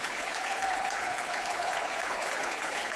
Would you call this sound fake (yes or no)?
yes